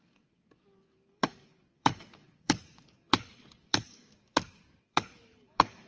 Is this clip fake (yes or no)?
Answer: yes